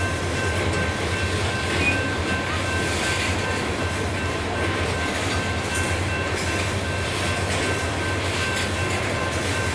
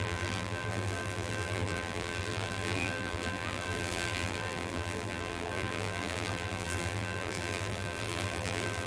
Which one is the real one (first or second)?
first